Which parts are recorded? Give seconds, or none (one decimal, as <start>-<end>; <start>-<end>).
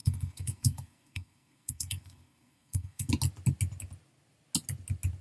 3.1-5.2